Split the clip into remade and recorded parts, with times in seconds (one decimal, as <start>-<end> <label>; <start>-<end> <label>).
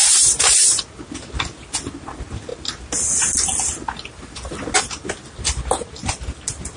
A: 0.0-0.8 remade; 0.8-6.8 recorded